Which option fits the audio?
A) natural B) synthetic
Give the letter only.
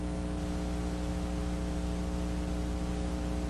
A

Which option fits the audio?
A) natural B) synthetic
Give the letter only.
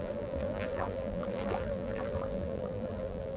B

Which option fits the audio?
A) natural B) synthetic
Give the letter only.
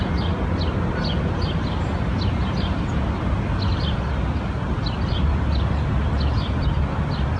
A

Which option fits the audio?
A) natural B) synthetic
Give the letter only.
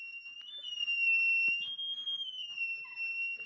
A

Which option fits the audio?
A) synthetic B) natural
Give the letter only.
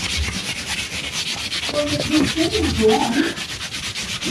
B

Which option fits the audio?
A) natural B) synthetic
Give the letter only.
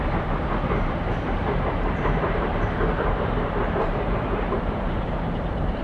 B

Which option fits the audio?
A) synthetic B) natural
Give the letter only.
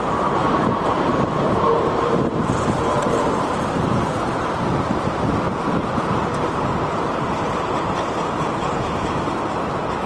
A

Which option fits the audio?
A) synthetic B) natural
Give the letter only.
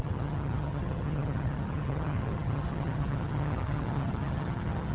A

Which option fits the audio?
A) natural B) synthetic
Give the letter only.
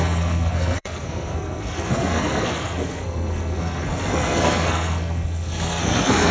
B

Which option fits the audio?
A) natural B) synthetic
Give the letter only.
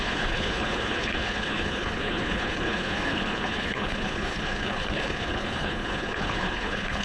B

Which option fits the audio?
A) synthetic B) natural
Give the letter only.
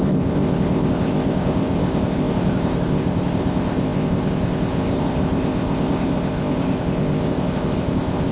A